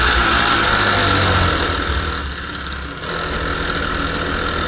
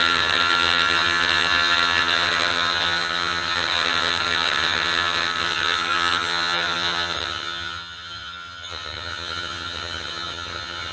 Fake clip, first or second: second